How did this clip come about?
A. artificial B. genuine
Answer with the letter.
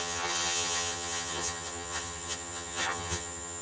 A